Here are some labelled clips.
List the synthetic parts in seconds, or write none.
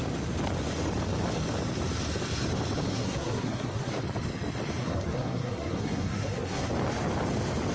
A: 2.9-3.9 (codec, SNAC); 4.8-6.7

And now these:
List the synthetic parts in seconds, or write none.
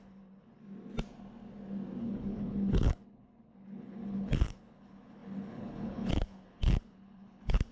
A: 0.0-0.6 (codec, HILCodec); 2.0-7.7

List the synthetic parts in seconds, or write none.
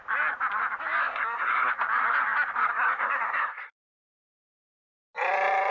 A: 1.0-1.7 (codec, SNAC); 2.7-4.3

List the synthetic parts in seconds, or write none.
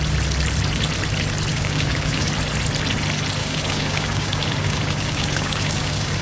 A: 1.5-2.3 (codec, DAC); 3.4-6.2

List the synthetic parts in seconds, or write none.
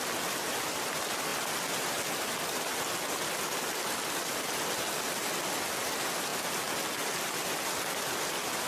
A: none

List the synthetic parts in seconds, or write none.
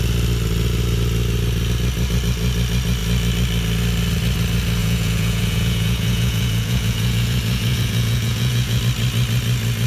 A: 4.8-8.8 (vocoder, Vocos)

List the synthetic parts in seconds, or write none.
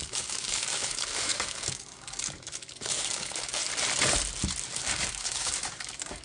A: 0.0-3.6 (codec, DAC); 4.8-6.2